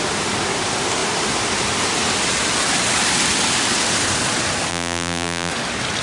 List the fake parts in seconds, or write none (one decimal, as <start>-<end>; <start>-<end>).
4.7-5.5